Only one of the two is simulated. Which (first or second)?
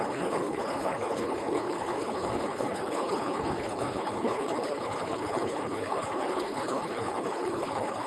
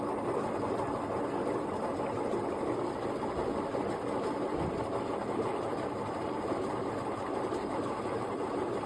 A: first